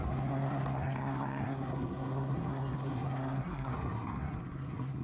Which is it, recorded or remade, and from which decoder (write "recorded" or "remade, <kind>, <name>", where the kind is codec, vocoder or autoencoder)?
remade, codec, SNAC